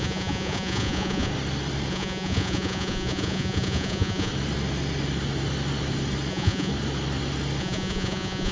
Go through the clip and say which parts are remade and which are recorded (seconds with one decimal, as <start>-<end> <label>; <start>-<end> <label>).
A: 0.0-1.3 remade; 1.3-1.9 recorded; 1.9-4.3 remade; 4.3-6.3 recorded; 6.3-6.7 remade; 6.7-7.6 recorded; 7.6-8.5 remade